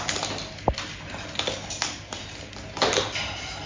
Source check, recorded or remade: recorded